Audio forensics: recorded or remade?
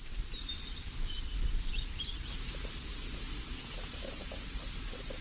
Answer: remade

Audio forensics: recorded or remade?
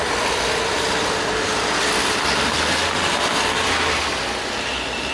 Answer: recorded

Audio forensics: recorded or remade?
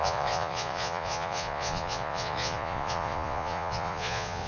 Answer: remade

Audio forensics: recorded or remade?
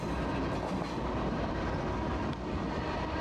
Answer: recorded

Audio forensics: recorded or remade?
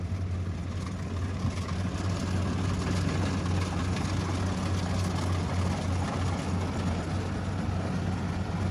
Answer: recorded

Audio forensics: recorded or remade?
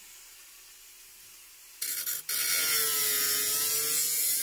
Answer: recorded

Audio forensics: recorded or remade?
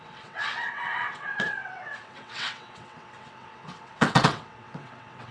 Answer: remade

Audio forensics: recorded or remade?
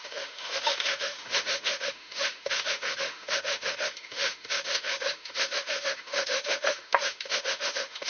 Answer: remade